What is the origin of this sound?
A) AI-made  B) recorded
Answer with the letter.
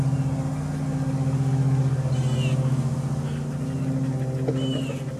B